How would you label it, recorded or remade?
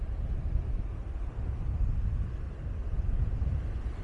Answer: recorded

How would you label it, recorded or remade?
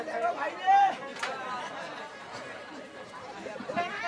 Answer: remade